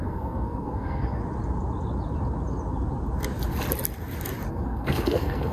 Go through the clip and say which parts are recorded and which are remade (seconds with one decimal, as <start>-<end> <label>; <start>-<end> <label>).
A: 0.0-1.2 remade; 1.2-4.5 recorded; 4.5-5.5 remade